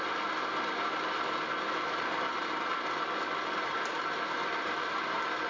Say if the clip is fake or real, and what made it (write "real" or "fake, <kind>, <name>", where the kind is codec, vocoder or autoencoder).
real